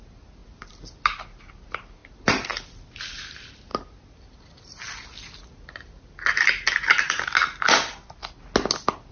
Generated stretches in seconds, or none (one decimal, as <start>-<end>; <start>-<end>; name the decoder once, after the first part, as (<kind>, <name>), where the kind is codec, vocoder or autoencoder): none

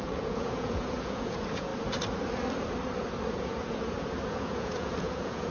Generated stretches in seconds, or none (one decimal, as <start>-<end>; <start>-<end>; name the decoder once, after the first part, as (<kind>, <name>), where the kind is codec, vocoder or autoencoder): 0.0-1.7 (vocoder, Vocos); 3.3-5.5

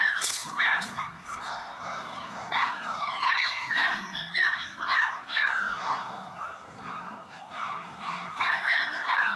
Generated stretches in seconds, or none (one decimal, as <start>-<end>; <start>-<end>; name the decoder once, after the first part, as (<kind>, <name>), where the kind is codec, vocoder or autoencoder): 0.0-9.4 (codec, SNAC)

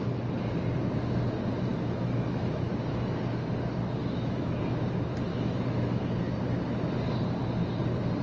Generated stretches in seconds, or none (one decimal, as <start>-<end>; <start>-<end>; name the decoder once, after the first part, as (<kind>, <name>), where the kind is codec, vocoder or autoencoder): 1.7-3.2 (autoencoder, DAC-VAE); 4.0-4.6; 5.3-6.0

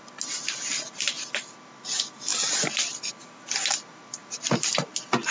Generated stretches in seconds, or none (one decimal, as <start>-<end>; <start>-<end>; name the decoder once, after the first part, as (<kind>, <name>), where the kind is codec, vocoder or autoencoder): none

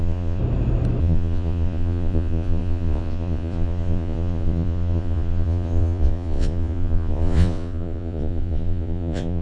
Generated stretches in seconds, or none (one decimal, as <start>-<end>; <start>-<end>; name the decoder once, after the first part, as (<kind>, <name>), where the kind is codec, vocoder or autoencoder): 0.0-0.4 (vocoder, Vocos); 1.0-9.4

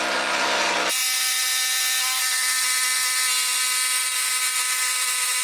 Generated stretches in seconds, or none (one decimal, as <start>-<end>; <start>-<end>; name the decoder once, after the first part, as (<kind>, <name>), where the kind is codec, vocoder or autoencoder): 0.0-1.0 (vocoder, BigVGAN v2); 4.0-5.4

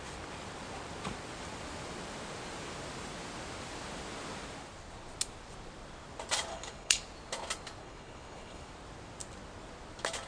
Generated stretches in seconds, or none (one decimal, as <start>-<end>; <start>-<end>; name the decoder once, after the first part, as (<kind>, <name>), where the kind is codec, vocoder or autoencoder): 6.5-7.0 (codec, HILCodec); 7.8-8.7